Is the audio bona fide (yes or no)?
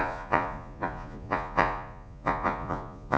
no